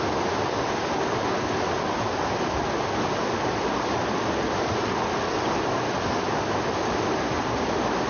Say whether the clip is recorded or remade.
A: recorded